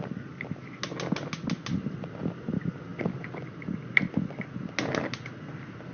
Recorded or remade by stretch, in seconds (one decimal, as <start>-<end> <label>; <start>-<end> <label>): 0.0-5.9 recorded